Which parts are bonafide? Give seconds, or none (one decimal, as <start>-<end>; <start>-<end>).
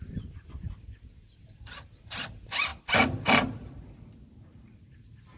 0.0-5.4